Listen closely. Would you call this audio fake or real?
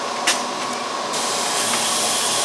real